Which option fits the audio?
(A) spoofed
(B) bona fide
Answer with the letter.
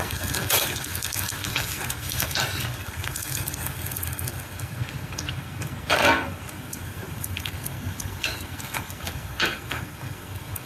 A